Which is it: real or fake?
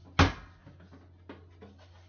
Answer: real